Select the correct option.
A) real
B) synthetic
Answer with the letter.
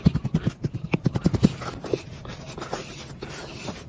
A